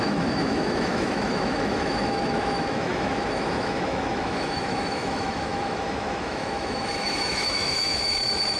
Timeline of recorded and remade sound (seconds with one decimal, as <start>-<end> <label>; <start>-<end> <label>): 0.0-8.6 remade